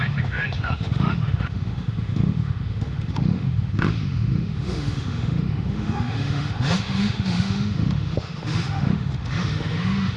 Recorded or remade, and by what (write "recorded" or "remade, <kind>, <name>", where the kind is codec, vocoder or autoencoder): remade, autoencoder, DAC-VAE